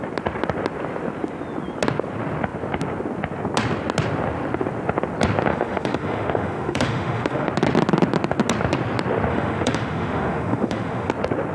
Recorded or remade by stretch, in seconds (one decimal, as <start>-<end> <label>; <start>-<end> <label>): 0.0-5.5 recorded; 5.5-7.5 remade; 7.5-9.3 recorded; 9.3-11.1 remade; 11.1-11.5 recorded